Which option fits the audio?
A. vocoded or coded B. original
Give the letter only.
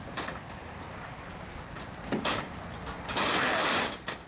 B